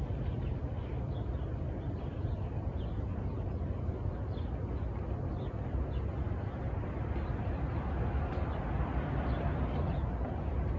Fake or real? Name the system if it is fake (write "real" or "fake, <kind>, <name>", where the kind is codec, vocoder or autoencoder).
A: real